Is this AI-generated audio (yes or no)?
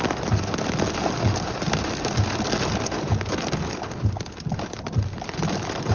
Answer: no